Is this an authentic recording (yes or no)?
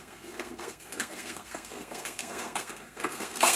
no